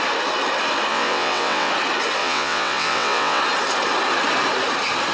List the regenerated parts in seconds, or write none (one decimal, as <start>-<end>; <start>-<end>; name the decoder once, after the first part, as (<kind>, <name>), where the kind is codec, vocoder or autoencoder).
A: 0.9-1.7 (vocoder, WaveNeXt); 2.2-3.4